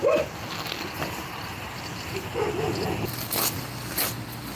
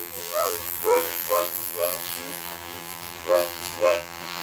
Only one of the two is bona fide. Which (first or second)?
first